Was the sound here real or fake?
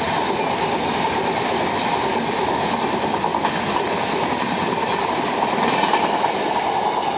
real